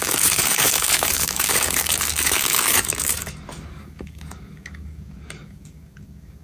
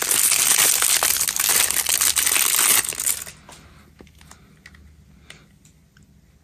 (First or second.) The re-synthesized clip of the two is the first